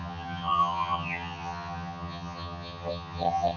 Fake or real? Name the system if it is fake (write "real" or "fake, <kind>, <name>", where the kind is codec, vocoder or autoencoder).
fake, vocoder, HiFi-GAN